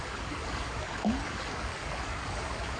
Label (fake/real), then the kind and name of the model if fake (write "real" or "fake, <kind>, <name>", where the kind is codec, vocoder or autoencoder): fake, codec, DAC